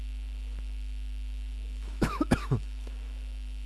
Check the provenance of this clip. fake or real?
fake